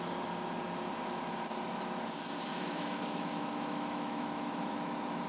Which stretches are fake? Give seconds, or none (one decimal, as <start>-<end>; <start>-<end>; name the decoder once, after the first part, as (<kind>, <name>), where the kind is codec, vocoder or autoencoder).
2.5-4.7 (autoencoder, DAC-VAE)